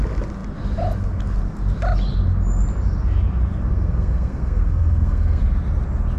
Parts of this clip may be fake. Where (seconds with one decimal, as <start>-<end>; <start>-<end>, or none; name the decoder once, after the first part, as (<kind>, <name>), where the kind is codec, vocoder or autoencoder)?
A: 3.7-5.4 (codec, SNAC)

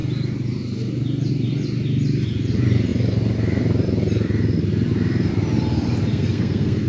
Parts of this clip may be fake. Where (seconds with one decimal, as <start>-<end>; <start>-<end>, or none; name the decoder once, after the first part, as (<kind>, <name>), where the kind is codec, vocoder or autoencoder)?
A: 6.1-6.9 (codec, SNAC)

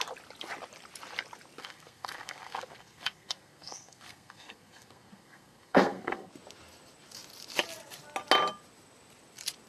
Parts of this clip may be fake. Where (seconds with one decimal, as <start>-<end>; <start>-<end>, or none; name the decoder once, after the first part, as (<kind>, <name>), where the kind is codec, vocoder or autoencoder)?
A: 1.6-6.3 (codec, SNAC)

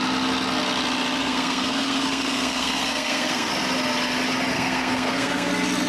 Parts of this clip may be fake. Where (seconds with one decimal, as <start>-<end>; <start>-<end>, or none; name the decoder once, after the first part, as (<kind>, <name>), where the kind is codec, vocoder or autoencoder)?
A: 1.2-3.5 (codec, SNAC); 4.5-5.5

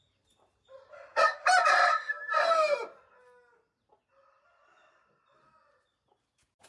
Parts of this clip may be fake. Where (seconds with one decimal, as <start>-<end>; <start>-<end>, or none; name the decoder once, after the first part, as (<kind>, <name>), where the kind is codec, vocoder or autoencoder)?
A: none

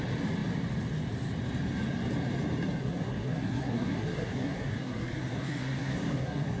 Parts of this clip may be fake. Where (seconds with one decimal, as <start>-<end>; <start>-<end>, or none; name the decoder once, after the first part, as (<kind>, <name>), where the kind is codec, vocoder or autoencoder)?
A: 2.8-6.6 (codec, SNAC)

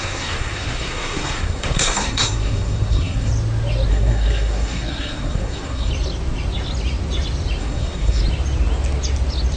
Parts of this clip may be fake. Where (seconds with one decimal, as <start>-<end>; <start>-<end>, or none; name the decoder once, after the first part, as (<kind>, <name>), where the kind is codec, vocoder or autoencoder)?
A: 0.0-3.3 (codec, SNAC); 3.9-5.9; 7.6-8.2

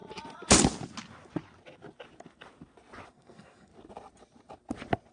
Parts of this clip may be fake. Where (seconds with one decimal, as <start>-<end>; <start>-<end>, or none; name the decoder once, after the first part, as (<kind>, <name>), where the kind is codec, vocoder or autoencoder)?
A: 3.1-3.7 (codec, SNAC)